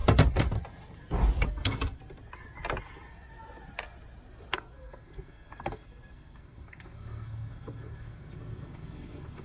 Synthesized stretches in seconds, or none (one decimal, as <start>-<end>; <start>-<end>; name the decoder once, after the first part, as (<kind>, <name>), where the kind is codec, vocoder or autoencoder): 1.5-2.0 (codec, SNAC); 4.5-9.4